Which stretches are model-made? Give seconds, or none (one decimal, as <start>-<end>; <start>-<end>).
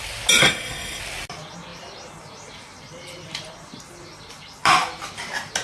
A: 0.4-1.0